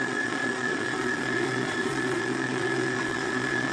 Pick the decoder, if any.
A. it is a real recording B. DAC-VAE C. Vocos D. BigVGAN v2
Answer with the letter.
C